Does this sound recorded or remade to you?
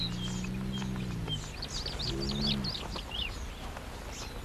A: recorded